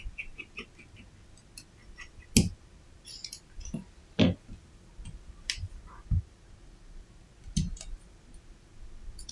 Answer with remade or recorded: recorded